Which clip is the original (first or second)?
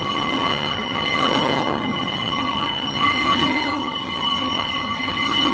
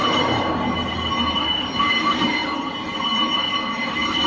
second